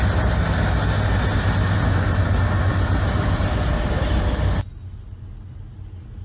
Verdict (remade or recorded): recorded